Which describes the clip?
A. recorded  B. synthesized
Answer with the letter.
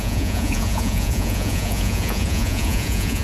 B